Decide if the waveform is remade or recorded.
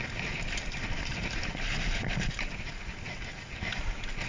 recorded